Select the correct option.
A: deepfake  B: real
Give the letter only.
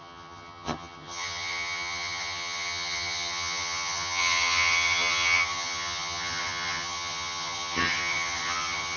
A